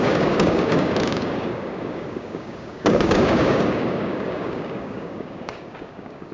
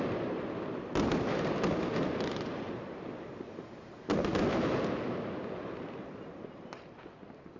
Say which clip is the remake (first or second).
first